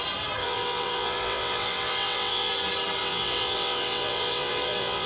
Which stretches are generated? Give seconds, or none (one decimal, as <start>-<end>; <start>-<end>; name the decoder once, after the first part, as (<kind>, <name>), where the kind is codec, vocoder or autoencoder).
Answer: 0.4-2.5 (vocoder, WaveNeXt); 3.0-5.1

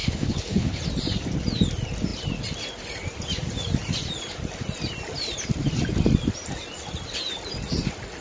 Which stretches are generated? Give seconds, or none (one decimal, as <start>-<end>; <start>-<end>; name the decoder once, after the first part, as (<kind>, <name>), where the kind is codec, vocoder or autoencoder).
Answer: 0.0-0.8 (codec, HILCodec)

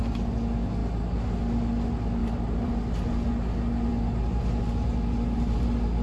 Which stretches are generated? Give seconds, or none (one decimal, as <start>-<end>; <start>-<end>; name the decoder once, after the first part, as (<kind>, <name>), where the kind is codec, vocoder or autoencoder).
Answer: 2.2-2.7 (vocoder, BigVGAN v2)

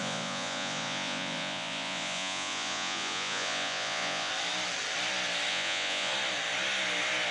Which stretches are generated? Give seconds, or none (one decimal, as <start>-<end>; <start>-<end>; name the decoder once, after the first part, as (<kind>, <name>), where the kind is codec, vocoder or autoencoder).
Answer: 0.0-4.3 (vocoder, Vocos); 5.5-6.1

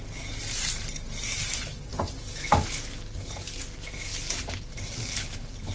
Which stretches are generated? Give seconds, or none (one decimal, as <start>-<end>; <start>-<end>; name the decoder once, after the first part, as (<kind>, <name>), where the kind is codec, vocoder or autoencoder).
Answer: none